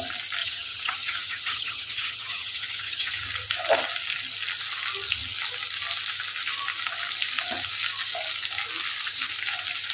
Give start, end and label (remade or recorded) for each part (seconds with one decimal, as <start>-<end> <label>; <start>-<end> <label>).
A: 0.0-0.4 recorded; 0.4-3.1 remade; 3.1-9.9 recorded